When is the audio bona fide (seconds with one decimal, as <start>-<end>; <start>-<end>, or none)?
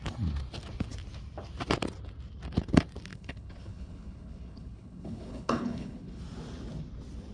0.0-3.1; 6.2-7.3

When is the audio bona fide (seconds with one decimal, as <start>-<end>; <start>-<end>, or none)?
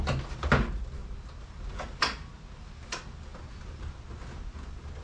0.0-5.0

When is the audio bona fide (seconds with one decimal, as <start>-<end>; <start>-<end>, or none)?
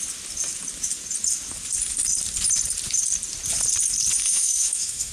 0.0-4.2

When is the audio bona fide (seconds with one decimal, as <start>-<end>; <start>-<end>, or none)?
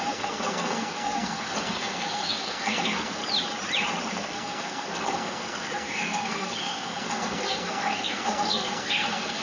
3.2-4.1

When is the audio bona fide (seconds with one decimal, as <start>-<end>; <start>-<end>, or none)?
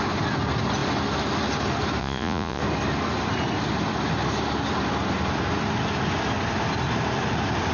0.0-2.0; 2.6-7.7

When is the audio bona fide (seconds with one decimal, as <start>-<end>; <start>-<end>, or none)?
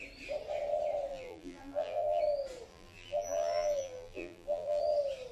0.0-1.1; 2.2-2.7; 4.8-5.3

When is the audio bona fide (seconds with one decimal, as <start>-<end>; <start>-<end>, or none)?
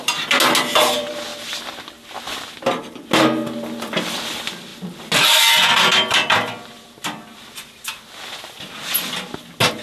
0.0-9.8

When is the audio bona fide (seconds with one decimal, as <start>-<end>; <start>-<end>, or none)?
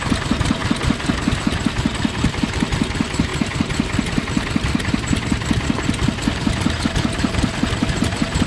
0.0-8.5